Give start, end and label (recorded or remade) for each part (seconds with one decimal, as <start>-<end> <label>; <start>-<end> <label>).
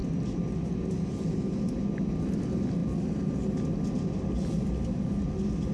0.0-5.7 recorded